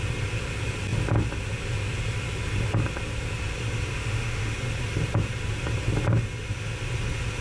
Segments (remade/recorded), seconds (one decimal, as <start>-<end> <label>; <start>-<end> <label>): 0.0-3.9 recorded; 3.9-4.5 remade; 4.5-7.4 recorded